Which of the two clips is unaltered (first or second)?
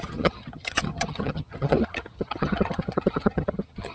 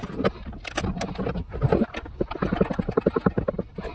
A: second